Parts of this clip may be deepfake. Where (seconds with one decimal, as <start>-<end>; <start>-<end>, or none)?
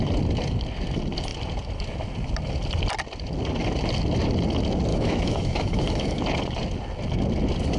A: 4.9-6.2